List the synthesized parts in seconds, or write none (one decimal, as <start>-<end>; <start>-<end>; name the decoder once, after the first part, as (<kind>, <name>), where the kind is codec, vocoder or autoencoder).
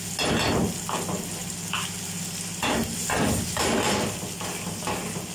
none